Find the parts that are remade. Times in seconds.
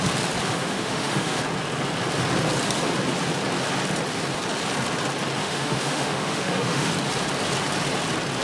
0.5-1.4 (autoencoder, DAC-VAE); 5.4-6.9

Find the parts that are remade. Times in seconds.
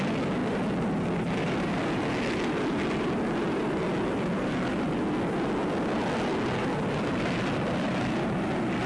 none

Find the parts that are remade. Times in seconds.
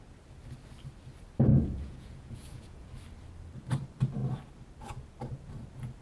1.5-2.9 (vocoder, Vocos)